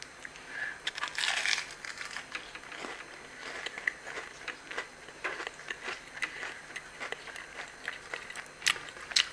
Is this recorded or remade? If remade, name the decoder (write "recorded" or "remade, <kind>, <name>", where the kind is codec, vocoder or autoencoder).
recorded